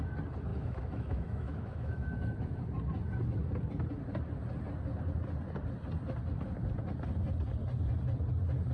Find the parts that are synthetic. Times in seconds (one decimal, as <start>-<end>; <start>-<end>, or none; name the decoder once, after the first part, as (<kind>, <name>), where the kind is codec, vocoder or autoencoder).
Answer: 0.5-2.6 (autoencoder, DAC-VAE)